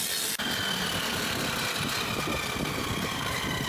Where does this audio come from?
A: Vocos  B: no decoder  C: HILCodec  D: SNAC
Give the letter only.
B